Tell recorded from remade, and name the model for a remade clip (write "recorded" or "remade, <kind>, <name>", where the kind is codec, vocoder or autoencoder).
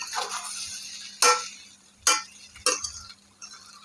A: recorded